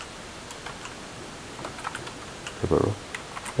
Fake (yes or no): no